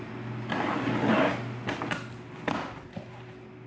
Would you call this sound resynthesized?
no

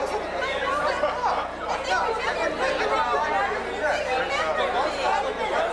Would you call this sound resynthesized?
no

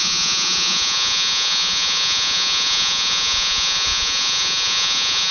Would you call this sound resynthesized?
yes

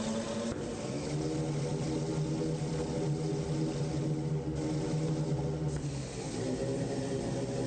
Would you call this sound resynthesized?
no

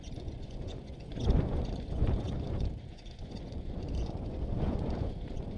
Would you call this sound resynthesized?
yes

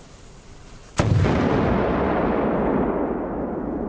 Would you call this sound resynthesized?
no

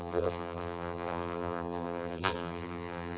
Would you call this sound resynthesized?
yes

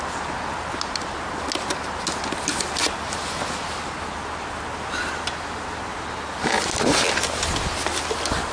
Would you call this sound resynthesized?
no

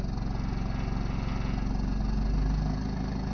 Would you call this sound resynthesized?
no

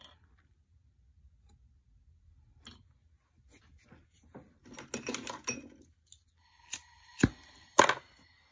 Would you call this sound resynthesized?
no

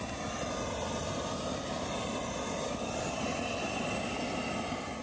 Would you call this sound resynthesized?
no